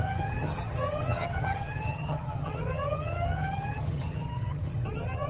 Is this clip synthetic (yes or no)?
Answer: yes